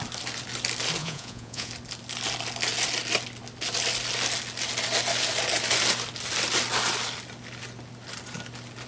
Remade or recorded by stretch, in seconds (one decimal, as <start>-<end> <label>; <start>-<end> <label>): 0.0-1.0 recorded; 1.0-1.7 remade; 1.7-8.9 recorded